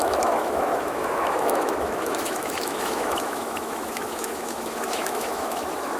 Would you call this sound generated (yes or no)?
yes